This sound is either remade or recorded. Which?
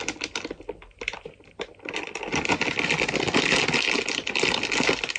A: recorded